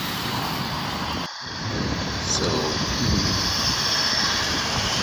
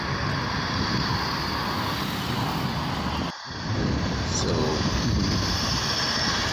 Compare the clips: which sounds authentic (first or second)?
second